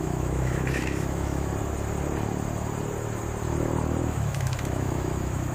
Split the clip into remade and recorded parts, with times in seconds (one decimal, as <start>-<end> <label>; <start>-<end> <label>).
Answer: 0.0-1.5 remade; 1.5-4.0 recorded; 4.0-5.5 remade